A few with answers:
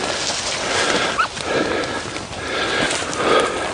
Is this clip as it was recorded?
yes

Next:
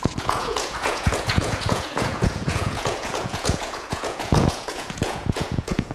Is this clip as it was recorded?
no